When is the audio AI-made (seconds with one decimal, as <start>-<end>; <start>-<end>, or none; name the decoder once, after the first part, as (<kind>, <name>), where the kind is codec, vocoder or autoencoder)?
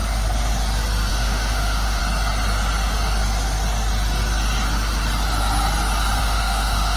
1.1-2.0 (autoencoder, DAC-VAE); 6.2-7.0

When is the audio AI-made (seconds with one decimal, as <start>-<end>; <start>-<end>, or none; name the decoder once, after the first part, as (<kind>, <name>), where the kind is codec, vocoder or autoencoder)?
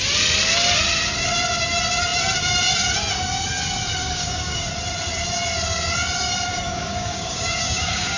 4.0-4.7 (codec, DAC); 6.5-8.2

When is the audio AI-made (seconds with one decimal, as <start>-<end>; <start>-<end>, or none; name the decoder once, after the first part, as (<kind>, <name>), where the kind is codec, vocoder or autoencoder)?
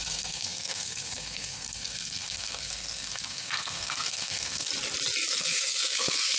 0.0-4.7 (codec, SNAC); 5.3-6.4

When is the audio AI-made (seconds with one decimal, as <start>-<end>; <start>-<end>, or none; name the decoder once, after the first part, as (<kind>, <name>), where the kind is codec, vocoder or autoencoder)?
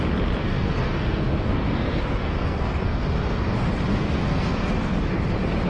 0.4-3.4 (codec, SNAC); 3.9-5.2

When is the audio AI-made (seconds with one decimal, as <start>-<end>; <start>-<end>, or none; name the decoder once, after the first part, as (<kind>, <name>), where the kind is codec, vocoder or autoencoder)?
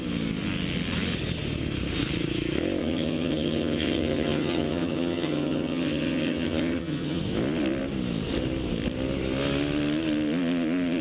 2.8-7.2 (vocoder, HiFi-GAN)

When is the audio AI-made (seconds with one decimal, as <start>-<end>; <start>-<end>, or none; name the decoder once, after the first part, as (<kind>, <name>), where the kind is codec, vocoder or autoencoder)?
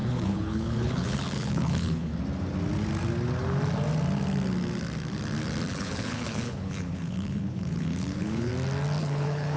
0.0-2.1 (codec, HILCodec); 5.7-8.5; 9.0-9.6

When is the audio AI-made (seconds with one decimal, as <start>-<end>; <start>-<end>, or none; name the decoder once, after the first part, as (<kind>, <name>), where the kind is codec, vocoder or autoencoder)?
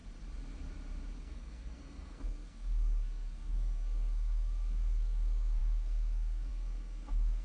1.2-7.4 (codec, SNAC)